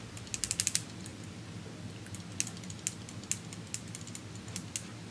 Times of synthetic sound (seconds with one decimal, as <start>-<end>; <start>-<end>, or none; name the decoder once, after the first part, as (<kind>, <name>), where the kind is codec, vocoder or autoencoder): none